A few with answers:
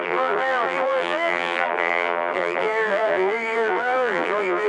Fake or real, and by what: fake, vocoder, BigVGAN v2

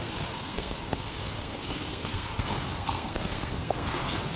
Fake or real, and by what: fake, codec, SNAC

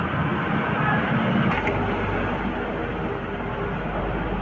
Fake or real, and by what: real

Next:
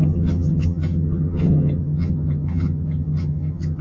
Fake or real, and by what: fake, vocoder, HiFi-GAN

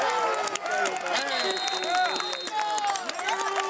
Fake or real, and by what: real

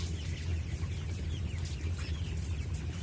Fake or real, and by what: real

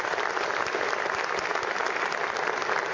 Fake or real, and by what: real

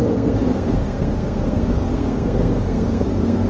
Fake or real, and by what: fake, codec, SNAC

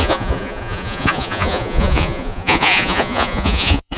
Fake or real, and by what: fake, vocoder, Vocos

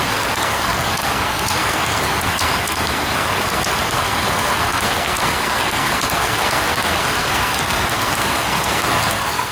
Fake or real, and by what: fake, codec, SNAC